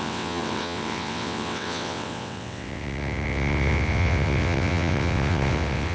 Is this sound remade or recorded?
remade